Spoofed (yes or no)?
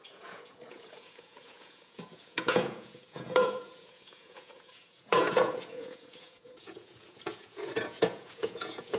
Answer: yes